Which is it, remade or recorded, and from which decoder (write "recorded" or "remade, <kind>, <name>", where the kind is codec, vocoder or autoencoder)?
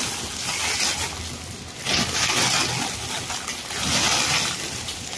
recorded